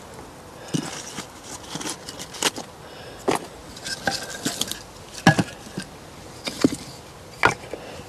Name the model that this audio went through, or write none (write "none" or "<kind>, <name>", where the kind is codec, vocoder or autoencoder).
none